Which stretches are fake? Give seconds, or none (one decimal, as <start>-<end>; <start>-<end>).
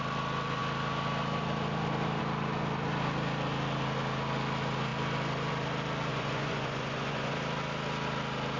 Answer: 6.1-7.3